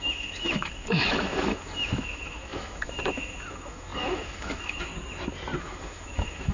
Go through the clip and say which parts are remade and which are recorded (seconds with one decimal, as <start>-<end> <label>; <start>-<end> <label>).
0.0-4.9 remade; 4.9-5.6 recorded; 5.6-6.5 remade